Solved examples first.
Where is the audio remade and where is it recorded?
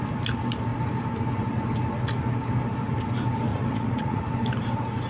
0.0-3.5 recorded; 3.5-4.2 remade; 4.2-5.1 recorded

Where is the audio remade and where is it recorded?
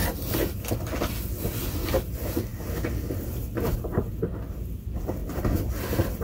0.0-6.2 recorded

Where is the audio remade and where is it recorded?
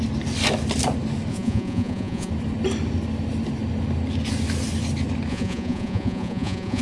0.0-1.3 recorded; 1.3-2.3 remade; 2.3-5.3 recorded; 5.3-6.8 remade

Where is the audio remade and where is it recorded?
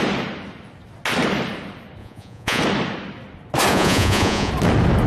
0.0-2.0 recorded; 2.0-2.6 remade; 2.6-3.7 recorded; 3.7-4.5 remade; 4.5-5.1 recorded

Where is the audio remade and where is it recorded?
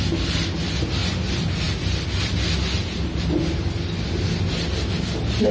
0.0-5.5 recorded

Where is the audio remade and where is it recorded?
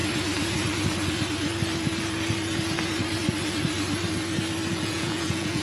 0.0-4.7 recorded; 4.7-5.6 remade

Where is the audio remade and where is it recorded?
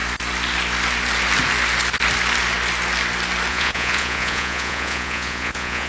0.0-3.5 recorded; 3.5-5.9 remade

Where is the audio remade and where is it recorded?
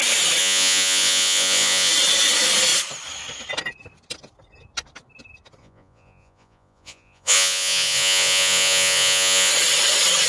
0.0-0.4 recorded; 0.4-1.9 remade; 1.9-5.6 recorded; 5.6-9.5 remade; 9.5-10.3 recorded